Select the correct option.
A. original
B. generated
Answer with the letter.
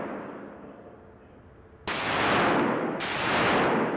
A